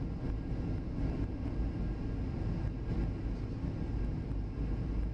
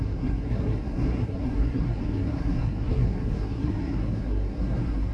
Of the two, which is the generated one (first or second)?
second